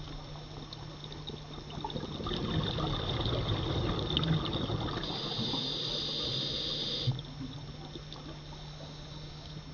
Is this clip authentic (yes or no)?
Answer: yes